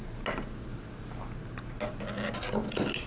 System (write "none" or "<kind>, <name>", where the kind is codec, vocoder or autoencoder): none